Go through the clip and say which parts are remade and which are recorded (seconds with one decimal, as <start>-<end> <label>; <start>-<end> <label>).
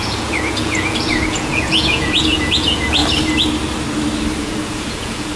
0.0-3.0 remade; 3.0-4.4 recorded; 4.4-5.4 remade